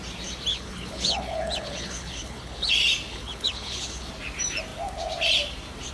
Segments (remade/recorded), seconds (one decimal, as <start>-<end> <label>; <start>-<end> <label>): 0.0-0.5 recorded; 0.5-2.7 remade; 2.7-3.1 recorded; 3.1-4.1 remade; 4.1-5.9 recorded

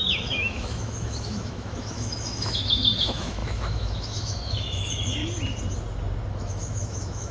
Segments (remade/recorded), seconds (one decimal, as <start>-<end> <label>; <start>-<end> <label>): 0.0-5.2 remade; 5.2-6.3 recorded; 6.3-7.3 remade

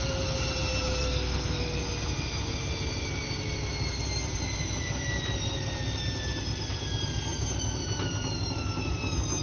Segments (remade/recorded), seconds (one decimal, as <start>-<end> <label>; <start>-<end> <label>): 0.0-1.0 recorded; 1.0-1.8 remade; 1.8-9.4 recorded

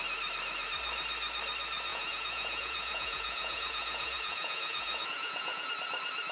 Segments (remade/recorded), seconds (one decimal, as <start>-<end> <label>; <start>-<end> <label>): 0.0-1.9 recorded; 1.9-5.7 remade; 5.7-6.3 recorded

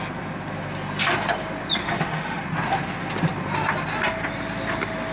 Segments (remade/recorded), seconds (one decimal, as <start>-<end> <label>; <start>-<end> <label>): 0.0-1.8 recorded; 1.8-2.4 remade; 2.4-5.1 recorded

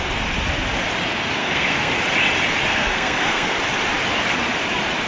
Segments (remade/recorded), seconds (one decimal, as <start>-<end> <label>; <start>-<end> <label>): 0.0-1.4 recorded; 1.4-1.9 remade; 1.9-2.7 recorded; 2.7-3.6 remade; 3.6-5.1 recorded

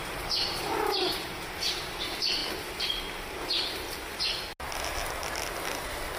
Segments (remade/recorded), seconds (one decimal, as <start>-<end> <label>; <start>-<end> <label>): 0.0-2.4 remade; 2.4-6.2 recorded

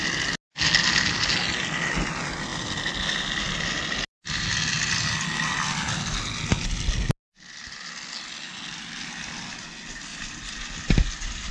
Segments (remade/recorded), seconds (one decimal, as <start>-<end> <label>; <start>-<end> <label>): 0.0-10.1 recorded; 10.1-11.5 remade